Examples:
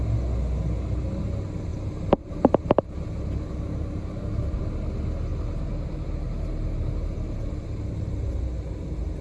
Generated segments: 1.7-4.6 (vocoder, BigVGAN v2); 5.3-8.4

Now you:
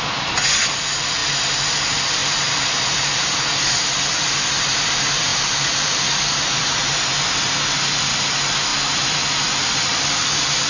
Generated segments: 2.2-3.4 (vocoder, BigVGAN v2); 5.3-7.2; 8.7-9.7

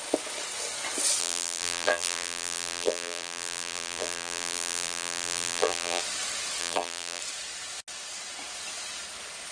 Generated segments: 1.2-6.0 (vocoder, BigVGAN v2); 6.6-7.2

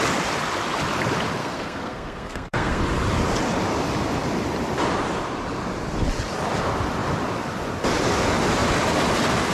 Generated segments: 1.4-2.8 (codec, SNAC)

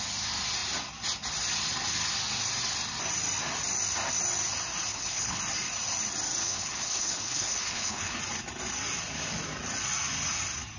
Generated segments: 4.9-5.4 (codec, HILCodec); 6.4-8.2

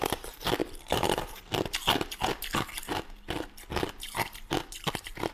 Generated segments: none